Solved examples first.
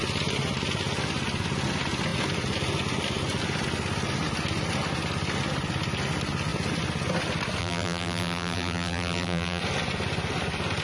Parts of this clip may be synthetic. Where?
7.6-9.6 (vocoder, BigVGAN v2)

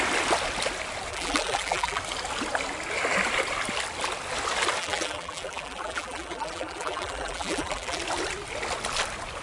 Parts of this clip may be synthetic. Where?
1.1-2.0 (vocoder, BigVGAN v2); 4.8-8.0

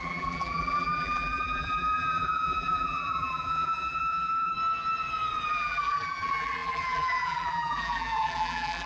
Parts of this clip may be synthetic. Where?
0.0-4.5 (vocoder, BigVGAN v2); 5.5-8.9